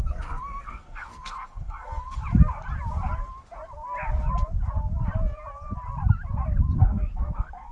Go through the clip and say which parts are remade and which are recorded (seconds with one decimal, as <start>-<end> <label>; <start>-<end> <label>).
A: 0.0-2.2 remade; 2.2-6.8 recorded; 6.8-7.7 remade